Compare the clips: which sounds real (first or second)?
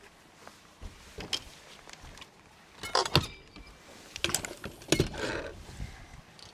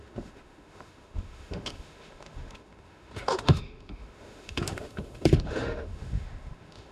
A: first